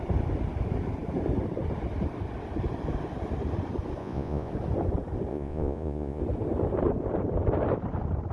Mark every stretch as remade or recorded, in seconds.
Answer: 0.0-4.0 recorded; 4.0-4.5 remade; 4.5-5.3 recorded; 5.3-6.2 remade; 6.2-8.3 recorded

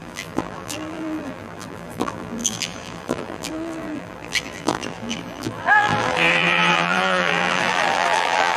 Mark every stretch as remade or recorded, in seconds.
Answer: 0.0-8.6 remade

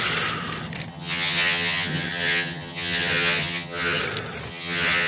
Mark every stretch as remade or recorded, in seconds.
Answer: 0.0-0.9 recorded; 0.9-4.0 remade; 4.0-4.5 recorded; 4.5-5.1 remade

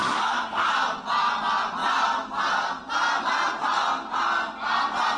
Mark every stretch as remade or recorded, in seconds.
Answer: 0.0-0.7 remade; 0.7-5.2 recorded

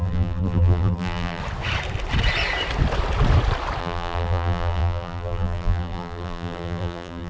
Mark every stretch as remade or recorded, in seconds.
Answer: 0.0-1.4 remade; 1.4-3.8 recorded; 3.8-7.3 remade

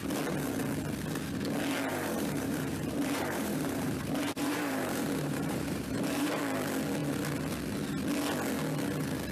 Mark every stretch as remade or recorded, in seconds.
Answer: 0.0-1.9 recorded; 1.9-6.4 remade; 6.4-9.3 recorded

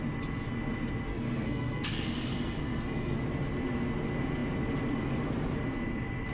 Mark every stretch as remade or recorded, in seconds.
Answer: 0.0-1.1 recorded; 1.1-3.2 remade; 3.2-6.3 recorded

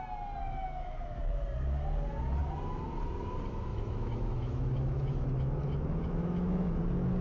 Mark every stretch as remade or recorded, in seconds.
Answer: 0.0-0.4 recorded; 0.4-1.2 remade; 1.2-3.7 recorded; 3.7-6.8 remade; 6.8-7.2 recorded